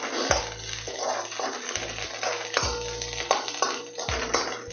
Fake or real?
real